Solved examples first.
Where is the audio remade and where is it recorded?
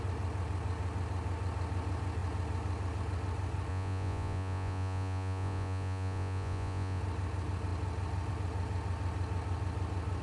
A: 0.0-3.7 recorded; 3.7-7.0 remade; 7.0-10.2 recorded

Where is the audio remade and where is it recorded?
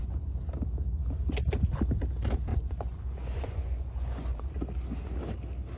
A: 0.0-0.5 remade; 0.5-2.5 recorded; 2.5-4.5 remade; 4.5-5.8 recorded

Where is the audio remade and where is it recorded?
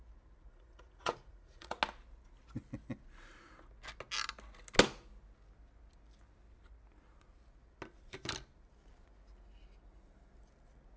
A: 0.0-0.5 recorded; 0.5-1.8 remade; 1.8-11.0 recorded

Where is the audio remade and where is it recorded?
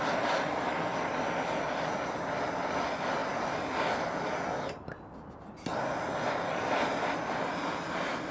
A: 0.0-8.3 recorded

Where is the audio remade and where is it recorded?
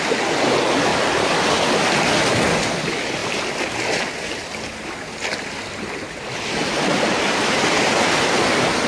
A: 0.0-8.9 recorded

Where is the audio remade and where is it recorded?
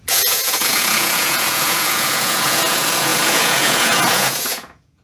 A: 0.0-5.0 remade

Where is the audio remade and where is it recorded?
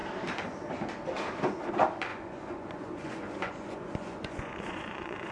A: 0.0-2.1 recorded; 2.1-5.3 remade